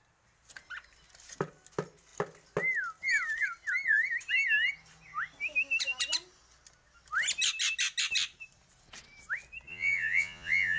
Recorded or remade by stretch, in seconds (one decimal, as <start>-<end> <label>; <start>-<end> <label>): 0.0-9.7 recorded; 9.7-10.8 remade